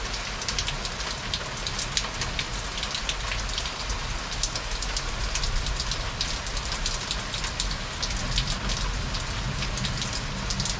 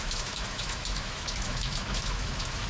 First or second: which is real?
first